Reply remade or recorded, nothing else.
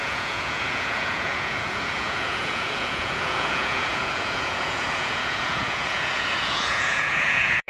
remade